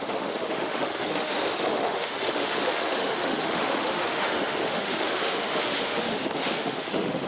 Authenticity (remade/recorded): remade